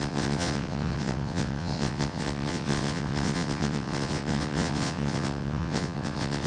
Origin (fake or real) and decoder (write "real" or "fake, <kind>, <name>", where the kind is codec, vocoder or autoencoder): fake, vocoder, WaveNeXt